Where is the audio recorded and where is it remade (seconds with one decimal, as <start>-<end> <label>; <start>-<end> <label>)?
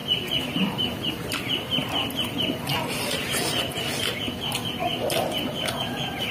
0.0-6.3 recorded